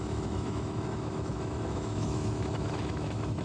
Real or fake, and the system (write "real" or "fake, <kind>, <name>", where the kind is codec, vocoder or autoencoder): fake, autoencoder, DAC-VAE